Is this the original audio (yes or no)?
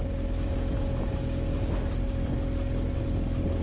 yes